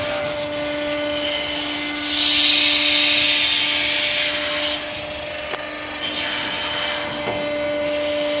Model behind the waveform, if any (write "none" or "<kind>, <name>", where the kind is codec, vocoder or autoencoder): none